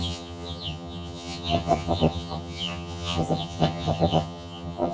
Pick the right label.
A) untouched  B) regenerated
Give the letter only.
B